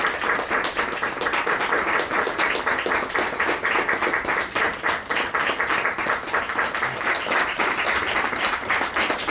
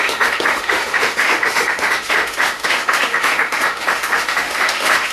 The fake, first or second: second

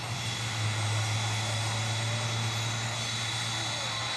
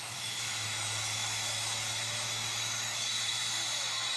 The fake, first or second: second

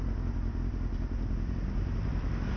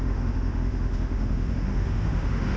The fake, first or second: second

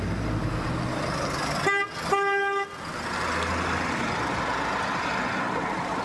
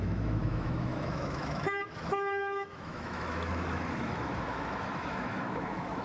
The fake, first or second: second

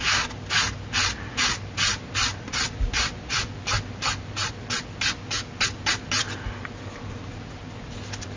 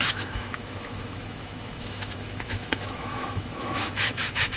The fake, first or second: second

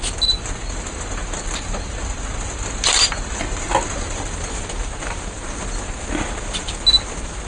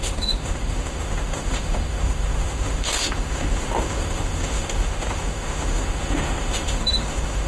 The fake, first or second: second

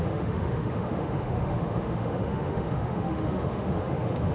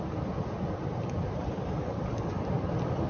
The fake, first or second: first